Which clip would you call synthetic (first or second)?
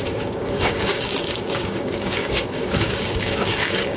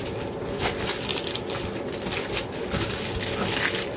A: first